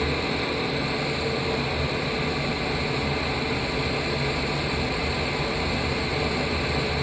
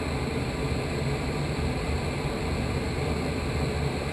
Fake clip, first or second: second